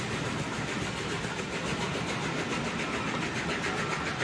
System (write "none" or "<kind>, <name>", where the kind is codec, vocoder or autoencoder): none